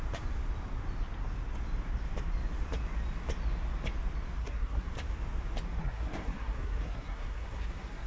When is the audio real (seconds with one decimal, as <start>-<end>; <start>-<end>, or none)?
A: 0.0-4.4; 4.9-5.8